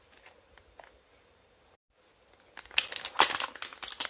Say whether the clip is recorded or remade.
recorded